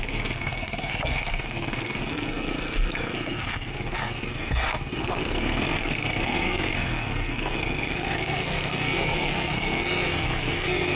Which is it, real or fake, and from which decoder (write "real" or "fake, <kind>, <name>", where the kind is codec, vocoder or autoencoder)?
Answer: fake, codec, SNAC